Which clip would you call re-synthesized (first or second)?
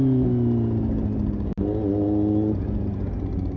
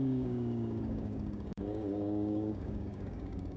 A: second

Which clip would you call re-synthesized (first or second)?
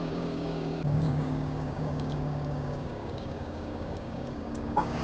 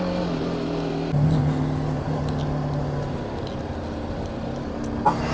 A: first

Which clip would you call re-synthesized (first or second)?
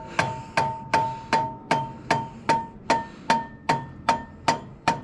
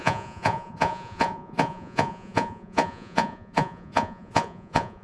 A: second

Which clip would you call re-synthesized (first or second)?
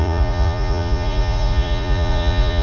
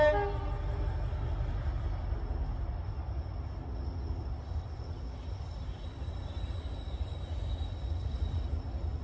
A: first